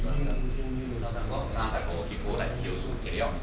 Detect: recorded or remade recorded